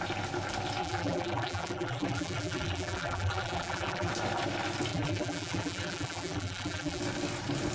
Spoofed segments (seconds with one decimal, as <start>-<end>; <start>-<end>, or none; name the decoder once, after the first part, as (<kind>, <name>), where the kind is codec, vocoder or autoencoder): 0.8-4.1 (vocoder, BigVGAN v2); 4.9-7.0